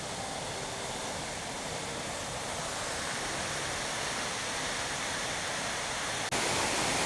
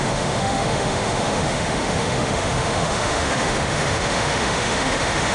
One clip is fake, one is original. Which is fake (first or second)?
second